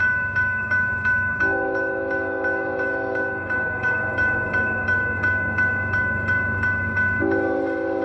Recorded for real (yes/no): no